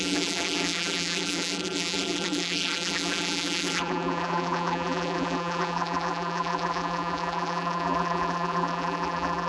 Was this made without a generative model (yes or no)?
no